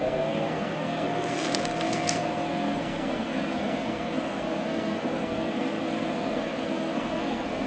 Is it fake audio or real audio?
fake